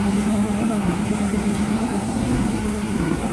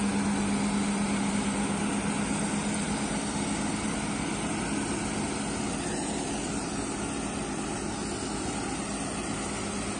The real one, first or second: second